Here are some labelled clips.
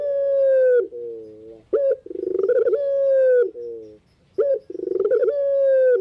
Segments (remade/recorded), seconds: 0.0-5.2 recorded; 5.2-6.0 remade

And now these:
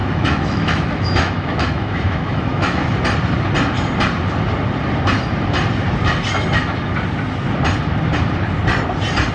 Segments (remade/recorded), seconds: 0.0-2.8 remade; 2.8-9.3 recorded